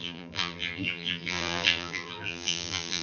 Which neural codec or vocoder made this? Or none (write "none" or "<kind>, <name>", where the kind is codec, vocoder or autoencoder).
vocoder, BigVGAN v2